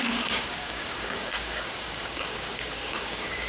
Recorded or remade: remade